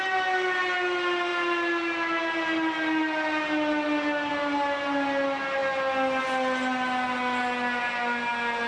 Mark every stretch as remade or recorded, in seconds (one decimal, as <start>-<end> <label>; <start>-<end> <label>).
0.0-8.7 recorded